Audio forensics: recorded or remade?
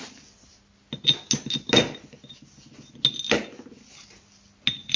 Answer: recorded